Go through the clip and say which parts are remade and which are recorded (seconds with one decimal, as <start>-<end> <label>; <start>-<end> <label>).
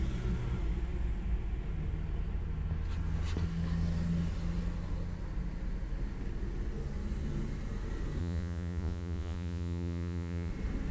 0.0-8.2 recorded; 8.2-10.5 remade; 10.5-10.9 recorded